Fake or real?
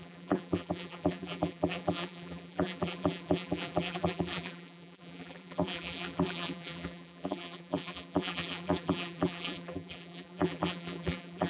fake